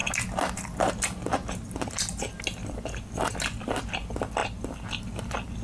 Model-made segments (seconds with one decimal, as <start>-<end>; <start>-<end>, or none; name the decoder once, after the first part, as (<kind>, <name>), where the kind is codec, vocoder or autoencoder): none